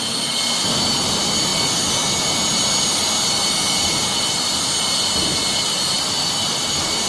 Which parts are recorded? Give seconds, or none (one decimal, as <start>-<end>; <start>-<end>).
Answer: 0.0-7.1